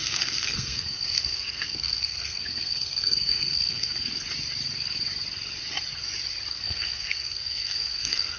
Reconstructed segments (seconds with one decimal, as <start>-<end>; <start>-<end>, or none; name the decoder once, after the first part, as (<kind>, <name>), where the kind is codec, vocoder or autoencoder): 0.0-4.1 (codec, SNAC); 6.5-8.4